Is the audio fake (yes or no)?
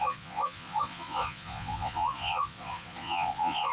yes